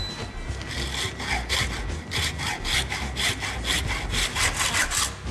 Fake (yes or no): no